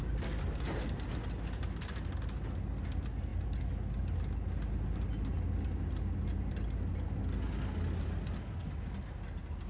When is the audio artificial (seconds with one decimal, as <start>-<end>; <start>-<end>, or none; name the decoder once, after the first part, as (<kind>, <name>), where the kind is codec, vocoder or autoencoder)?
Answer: none